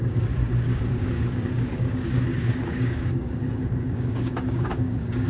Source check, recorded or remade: remade